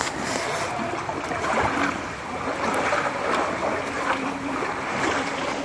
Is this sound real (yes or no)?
yes